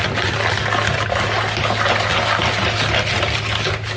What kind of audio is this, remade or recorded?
recorded